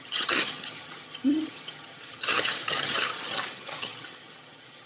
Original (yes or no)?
no